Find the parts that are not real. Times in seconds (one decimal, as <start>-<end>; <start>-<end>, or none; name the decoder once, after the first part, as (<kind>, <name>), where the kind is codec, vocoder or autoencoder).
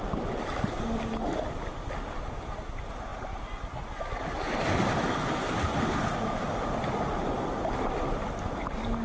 none